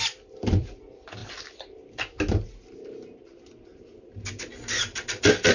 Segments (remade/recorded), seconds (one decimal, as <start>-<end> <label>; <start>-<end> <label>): 0.0-1.2 remade; 1.2-4.5 recorded; 4.5-5.5 remade